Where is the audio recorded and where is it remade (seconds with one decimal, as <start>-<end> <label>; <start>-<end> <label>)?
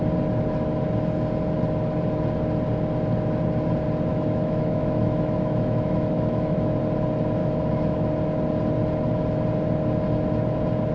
0.0-4.1 recorded; 4.1-6.8 remade; 6.8-7.4 recorded; 7.4-8.1 remade; 8.1-10.9 recorded